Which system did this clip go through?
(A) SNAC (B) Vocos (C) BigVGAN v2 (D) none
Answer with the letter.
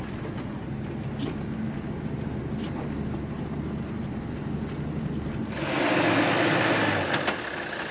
D